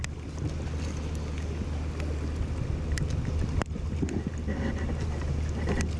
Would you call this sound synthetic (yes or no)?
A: no